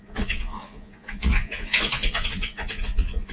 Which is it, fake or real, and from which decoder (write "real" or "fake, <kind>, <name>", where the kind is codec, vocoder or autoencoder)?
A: fake, vocoder, Vocos